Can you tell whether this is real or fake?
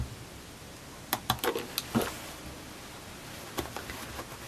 real